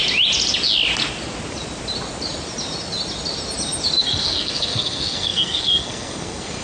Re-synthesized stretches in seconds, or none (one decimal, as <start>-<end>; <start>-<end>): 4.0-6.6